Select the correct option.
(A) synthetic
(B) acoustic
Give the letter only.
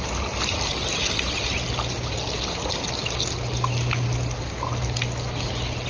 B